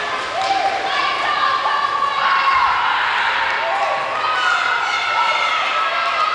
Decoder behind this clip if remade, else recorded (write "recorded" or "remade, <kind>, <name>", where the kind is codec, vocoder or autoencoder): recorded